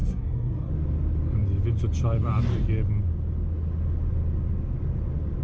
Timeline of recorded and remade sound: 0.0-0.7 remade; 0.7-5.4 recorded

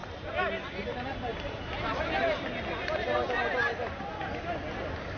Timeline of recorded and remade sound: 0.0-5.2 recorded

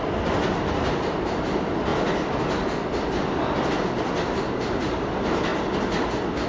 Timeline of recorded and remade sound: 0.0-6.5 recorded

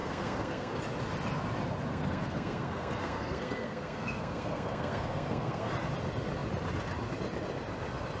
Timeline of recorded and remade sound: 0.0-0.8 remade; 0.8-1.9 recorded; 1.9-5.7 remade; 5.7-8.2 recorded

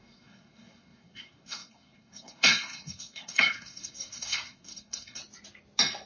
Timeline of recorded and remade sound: 0.0-5.2 remade; 5.2-6.1 recorded

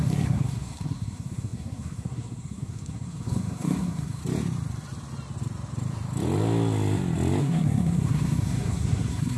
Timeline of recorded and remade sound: 0.0-4.2 remade; 4.2-7.4 recorded; 7.4-9.4 remade